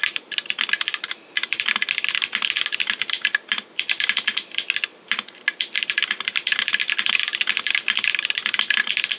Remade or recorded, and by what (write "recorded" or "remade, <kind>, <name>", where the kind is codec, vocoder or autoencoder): recorded